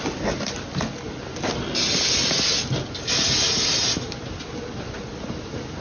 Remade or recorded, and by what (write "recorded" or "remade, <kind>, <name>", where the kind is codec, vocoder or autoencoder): recorded